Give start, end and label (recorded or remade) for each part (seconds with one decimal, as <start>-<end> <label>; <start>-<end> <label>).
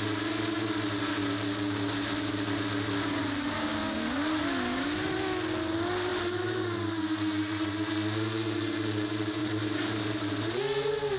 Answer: 0.0-6.1 recorded; 6.1-7.9 remade; 7.9-9.4 recorded; 9.4-10.6 remade; 10.6-11.2 recorded